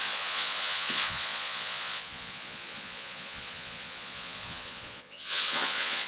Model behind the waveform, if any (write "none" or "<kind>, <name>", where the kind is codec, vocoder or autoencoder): vocoder, Vocos